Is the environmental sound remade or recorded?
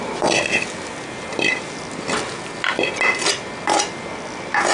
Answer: recorded